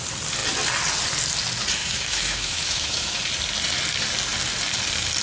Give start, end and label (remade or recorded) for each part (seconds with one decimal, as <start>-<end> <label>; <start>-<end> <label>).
0.0-1.8 recorded; 1.8-3.2 remade; 3.2-5.2 recorded